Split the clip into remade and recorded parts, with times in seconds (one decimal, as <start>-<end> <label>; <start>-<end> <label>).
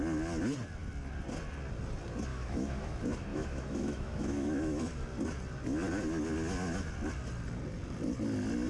0.0-2.3 recorded; 2.3-2.9 remade; 2.9-3.3 recorded; 3.3-4.8 remade; 4.8-8.7 recorded